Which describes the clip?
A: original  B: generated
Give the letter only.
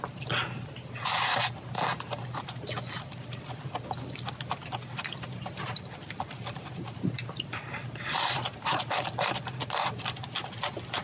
A